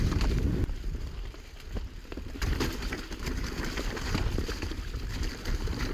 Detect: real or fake fake